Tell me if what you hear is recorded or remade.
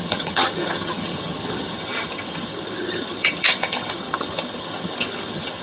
remade